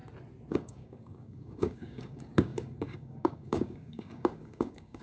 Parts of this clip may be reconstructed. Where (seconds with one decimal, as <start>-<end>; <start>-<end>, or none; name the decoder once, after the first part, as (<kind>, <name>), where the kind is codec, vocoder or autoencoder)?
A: 0.5-5.0 (codec, DAC)